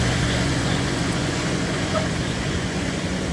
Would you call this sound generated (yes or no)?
yes